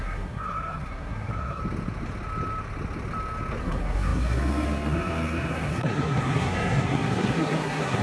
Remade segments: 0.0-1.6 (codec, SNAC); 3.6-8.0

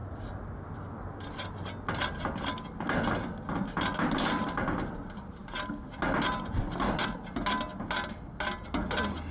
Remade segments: none

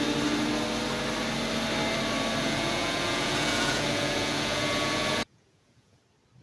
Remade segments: 2.4-6.0 (vocoder, Vocos)